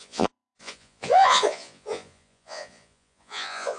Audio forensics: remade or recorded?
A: remade